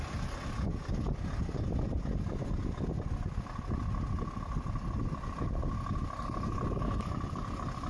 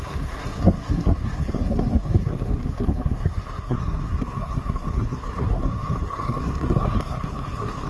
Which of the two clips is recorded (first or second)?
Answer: first